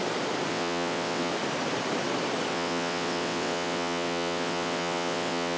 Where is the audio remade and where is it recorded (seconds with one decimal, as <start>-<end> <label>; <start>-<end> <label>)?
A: 0.0-0.5 recorded; 0.5-1.3 remade; 1.3-2.5 recorded; 2.5-5.6 remade